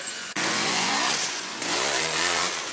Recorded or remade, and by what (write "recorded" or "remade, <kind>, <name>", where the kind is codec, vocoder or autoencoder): remade, vocoder, Vocos